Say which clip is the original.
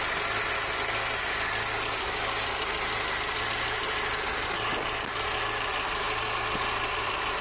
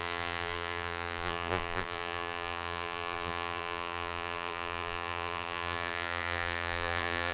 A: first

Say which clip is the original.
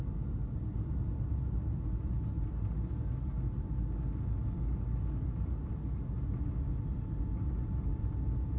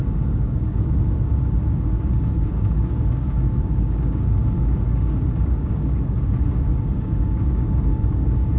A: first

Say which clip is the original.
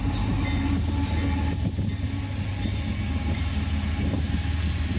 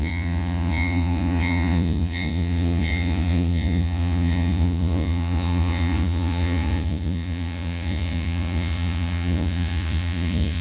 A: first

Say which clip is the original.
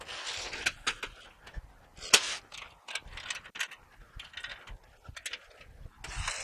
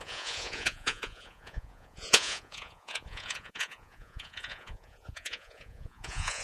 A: first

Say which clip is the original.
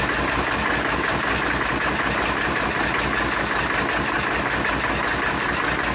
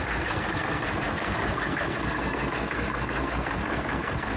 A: first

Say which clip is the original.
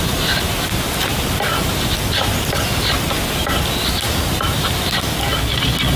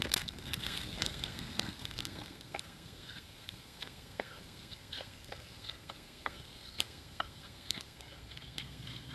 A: first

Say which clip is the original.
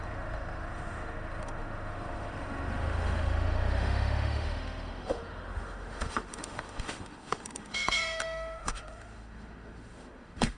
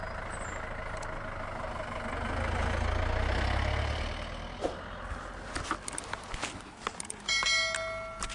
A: second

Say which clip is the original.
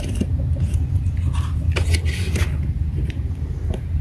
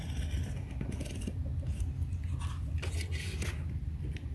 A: second